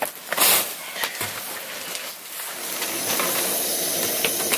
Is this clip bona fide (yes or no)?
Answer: yes